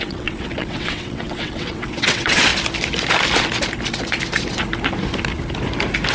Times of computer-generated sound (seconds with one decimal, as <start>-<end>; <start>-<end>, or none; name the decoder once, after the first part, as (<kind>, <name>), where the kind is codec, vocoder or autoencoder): 0.0-2.5 (vocoder, WaveNeXt)